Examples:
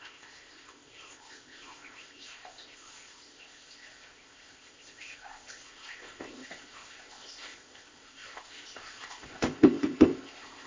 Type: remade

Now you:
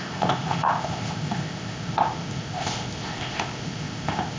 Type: remade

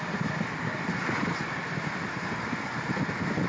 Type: recorded